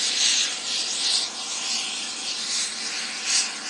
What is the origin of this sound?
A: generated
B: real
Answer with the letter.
B